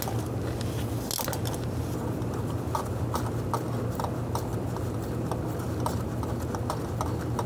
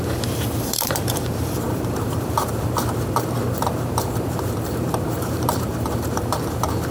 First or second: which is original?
first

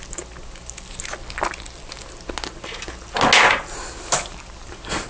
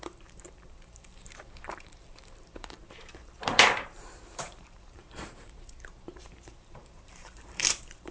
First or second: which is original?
first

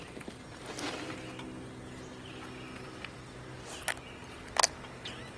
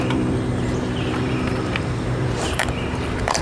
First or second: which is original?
first